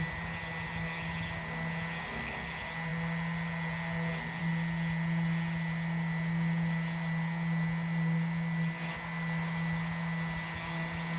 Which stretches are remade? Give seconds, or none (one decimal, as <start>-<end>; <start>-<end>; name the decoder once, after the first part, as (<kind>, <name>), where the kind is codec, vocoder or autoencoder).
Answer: none